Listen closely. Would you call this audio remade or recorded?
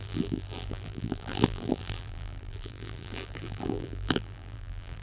remade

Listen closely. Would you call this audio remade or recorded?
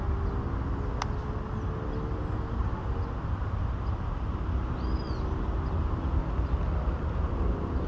recorded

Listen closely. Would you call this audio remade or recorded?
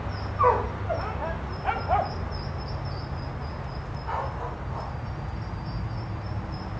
recorded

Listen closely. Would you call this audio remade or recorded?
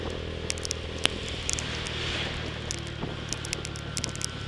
recorded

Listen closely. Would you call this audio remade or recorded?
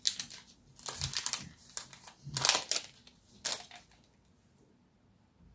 recorded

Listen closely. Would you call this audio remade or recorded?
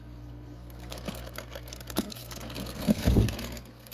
remade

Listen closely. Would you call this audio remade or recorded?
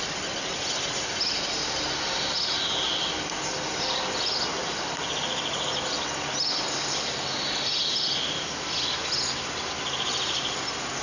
recorded